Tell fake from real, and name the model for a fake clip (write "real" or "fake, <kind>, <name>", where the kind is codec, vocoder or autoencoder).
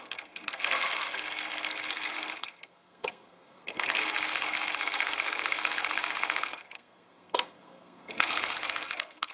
fake, codec, SNAC